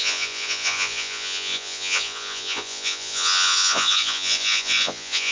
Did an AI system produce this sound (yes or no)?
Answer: yes